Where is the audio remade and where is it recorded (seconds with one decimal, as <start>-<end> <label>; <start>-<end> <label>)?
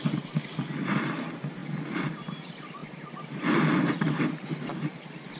0.0-5.4 recorded